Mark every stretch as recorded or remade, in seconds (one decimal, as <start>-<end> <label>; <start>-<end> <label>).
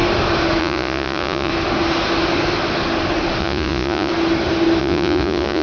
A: 0.0-0.6 recorded; 0.6-1.5 remade; 1.5-3.4 recorded; 3.4-4.1 remade; 4.1-4.8 recorded; 4.8-5.6 remade